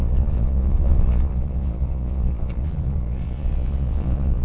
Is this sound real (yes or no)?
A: no